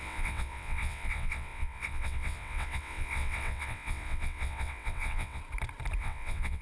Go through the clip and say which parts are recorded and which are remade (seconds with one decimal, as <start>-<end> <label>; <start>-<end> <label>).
0.0-5.4 remade; 5.4-6.0 recorded; 6.0-6.6 remade